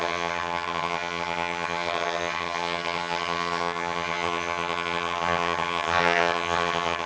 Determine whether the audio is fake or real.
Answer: fake